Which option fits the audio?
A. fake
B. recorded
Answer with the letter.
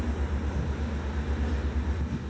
B